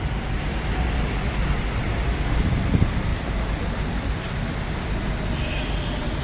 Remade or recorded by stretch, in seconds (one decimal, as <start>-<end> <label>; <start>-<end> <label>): 0.0-6.2 recorded